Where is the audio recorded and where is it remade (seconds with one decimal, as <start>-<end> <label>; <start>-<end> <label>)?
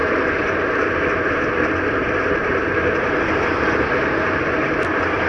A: 0.0-5.3 recorded